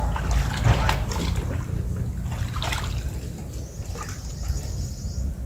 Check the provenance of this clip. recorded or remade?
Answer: recorded